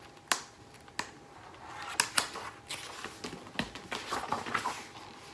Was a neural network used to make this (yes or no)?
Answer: no